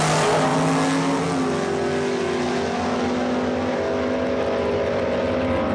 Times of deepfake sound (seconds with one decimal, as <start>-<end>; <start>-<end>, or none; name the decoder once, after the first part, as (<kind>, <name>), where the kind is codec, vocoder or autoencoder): none